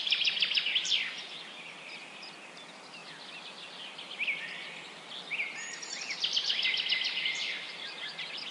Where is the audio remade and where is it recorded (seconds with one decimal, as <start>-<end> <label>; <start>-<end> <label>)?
0.0-3.0 remade; 3.0-6.8 recorded; 6.8-8.5 remade